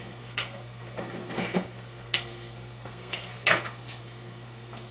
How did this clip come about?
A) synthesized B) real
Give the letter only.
A